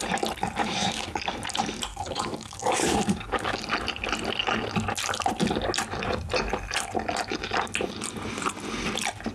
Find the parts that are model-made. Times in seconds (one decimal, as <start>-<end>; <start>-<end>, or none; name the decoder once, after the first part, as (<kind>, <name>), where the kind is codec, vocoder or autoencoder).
0.6-1.2 (codec, DAC); 1.9-3.6